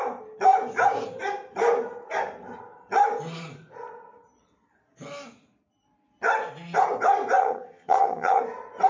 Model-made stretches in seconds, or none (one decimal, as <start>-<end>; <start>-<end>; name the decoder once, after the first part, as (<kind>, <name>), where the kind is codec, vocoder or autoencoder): 7.4-8.4 (vocoder, HiFi-GAN)